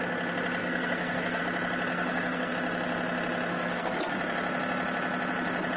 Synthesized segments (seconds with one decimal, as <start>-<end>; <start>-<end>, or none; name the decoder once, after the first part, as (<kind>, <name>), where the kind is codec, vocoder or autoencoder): 0.6-1.4 (codec, SNAC); 1.9-2.5; 3.5-4.0